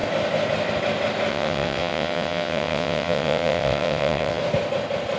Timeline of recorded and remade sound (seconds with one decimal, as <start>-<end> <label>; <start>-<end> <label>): 0.0-1.3 recorded; 1.3-4.4 remade; 4.4-5.2 recorded